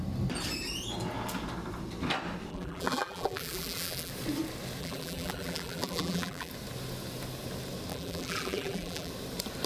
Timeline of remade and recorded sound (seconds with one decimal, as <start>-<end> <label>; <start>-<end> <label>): 0.0-2.5 recorded; 2.5-4.1 remade; 4.1-4.8 recorded; 4.8-6.5 remade; 6.5-7.9 recorded; 7.9-9.1 remade; 9.1-9.7 recorded